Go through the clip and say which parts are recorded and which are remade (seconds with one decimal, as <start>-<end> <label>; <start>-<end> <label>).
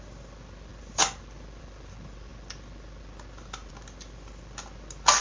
0.0-5.2 recorded